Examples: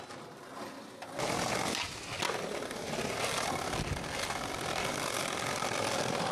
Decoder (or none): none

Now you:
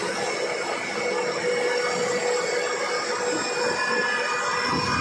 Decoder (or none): none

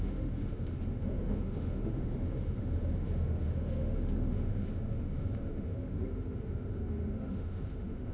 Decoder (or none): autoencoder, DAC-VAE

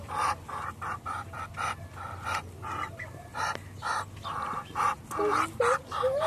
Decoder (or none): none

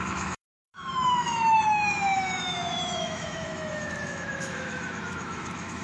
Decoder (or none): autoencoder, DAC-VAE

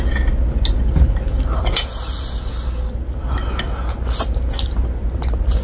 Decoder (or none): none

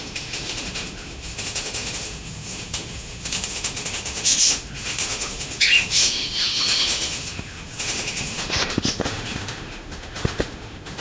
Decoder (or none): autoencoder, DAC-VAE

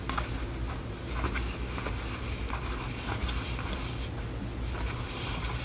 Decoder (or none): none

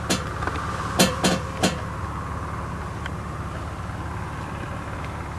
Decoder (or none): none